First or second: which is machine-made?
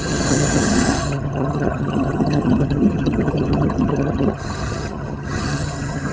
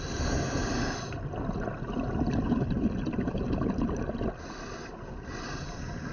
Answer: first